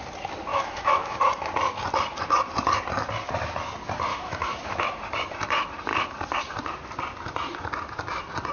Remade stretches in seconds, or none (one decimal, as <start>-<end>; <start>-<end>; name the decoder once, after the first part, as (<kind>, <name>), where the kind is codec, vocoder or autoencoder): 0.5-1.2 (autoencoder, DAC-VAE); 4.1-4.8